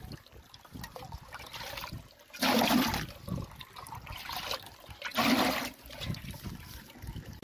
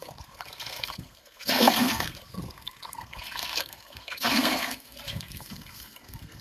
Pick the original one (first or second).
first